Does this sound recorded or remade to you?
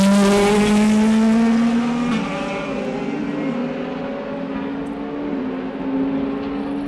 recorded